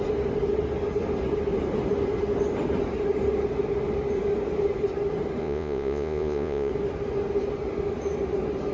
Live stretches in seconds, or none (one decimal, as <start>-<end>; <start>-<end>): 0.0-5.4; 6.7-8.7